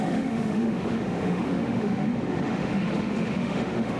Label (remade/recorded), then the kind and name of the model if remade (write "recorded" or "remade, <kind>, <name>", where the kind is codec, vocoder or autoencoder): remade, autoencoder, DAC-VAE